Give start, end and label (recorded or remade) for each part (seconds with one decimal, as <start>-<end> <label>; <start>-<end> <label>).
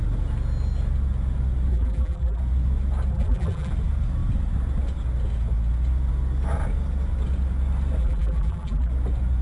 0.0-1.7 recorded; 1.7-2.4 remade; 2.4-3.1 recorded; 3.1-3.7 remade; 3.7-8.0 recorded; 8.0-8.9 remade; 8.9-9.4 recorded